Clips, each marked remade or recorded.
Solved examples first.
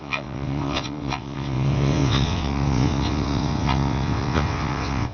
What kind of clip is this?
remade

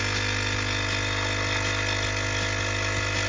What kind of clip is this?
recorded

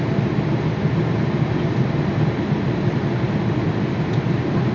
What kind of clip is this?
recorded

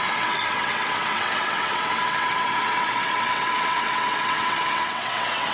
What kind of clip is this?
remade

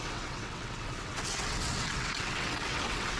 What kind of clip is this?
remade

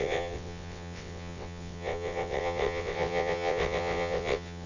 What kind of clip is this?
remade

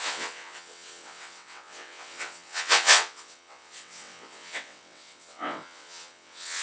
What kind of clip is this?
remade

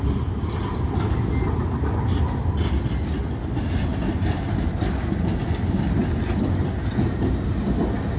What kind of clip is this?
recorded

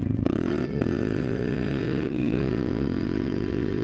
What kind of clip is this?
remade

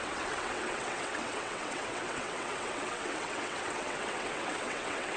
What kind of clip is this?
remade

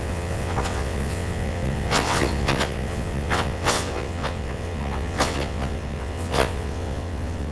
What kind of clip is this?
remade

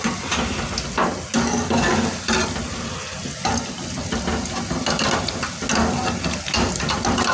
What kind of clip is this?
recorded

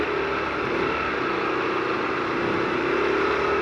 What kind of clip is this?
recorded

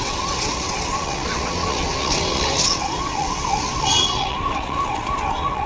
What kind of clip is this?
remade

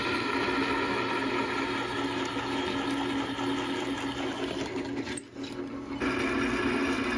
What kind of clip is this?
recorded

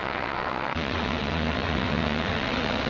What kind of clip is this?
remade